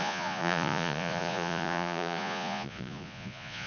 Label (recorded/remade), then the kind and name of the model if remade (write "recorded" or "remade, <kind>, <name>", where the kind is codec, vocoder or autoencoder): remade, vocoder, Vocos